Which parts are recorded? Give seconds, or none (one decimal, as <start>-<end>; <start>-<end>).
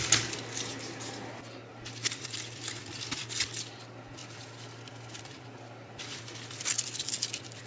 0.0-7.7